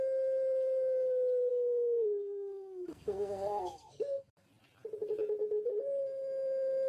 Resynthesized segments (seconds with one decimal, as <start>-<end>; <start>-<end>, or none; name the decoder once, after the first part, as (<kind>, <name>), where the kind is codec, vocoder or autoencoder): 1.5-4.5 (codec, SNAC)